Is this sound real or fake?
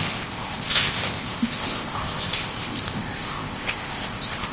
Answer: fake